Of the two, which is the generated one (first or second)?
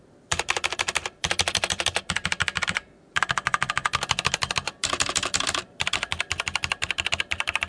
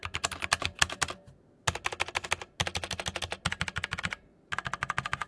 first